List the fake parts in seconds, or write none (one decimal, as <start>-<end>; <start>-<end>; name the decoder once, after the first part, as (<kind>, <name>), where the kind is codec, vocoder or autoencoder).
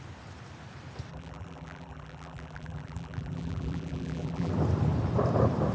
1.1-4.5 (vocoder, BigVGAN v2)